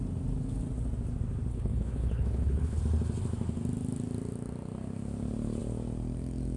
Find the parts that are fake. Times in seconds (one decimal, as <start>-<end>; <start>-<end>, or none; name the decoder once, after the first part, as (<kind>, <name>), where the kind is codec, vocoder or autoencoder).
1.5-2.8 (codec, HILCodec)